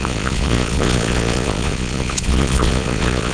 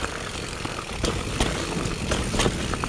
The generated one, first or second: first